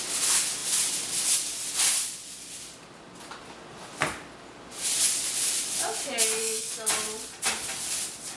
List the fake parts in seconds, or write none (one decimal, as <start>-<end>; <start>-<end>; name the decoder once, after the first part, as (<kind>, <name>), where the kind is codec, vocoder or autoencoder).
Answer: 6.4-6.9 (codec, SNAC)